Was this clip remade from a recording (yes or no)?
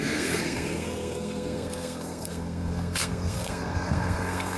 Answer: yes